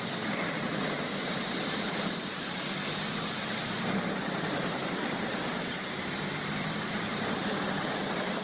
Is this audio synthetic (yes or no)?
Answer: yes